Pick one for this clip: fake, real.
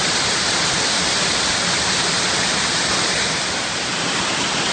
real